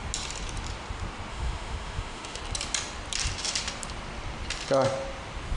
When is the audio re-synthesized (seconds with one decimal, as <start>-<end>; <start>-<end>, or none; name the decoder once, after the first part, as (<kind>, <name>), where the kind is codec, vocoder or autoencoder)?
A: 1.3-2.4 (autoencoder, DAC-VAE)